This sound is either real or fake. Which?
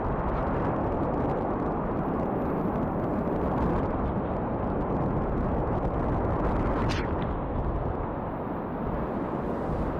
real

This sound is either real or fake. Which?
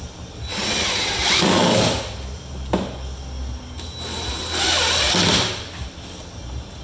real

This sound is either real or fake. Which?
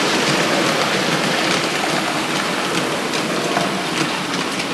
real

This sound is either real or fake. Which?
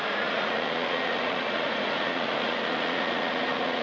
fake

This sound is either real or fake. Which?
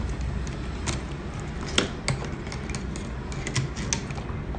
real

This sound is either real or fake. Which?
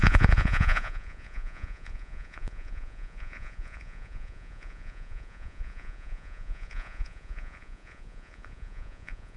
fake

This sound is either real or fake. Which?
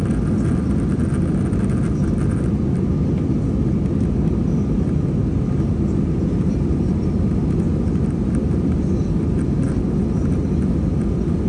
real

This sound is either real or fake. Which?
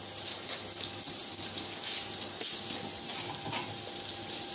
real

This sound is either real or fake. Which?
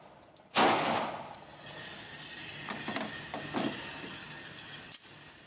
real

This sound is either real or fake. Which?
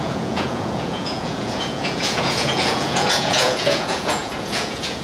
fake